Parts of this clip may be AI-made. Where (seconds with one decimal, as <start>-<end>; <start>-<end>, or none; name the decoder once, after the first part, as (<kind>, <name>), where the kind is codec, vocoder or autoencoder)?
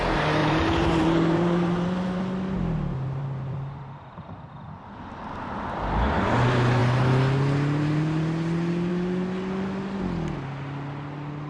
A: 0.4-2.2 (vocoder, BigVGAN v2); 3.2-4.5